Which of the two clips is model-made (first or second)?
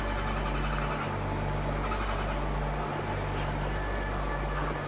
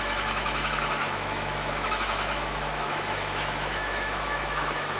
second